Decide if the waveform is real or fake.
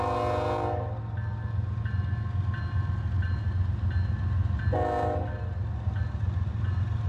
real